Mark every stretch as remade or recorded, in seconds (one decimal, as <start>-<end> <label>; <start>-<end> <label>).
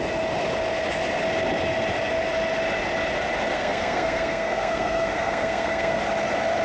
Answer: 0.0-3.5 recorded; 3.5-6.0 remade; 6.0-6.6 recorded